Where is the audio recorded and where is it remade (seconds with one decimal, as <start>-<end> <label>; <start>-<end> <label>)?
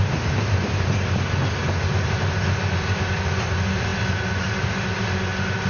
0.0-5.7 recorded